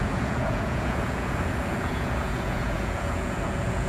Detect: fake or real fake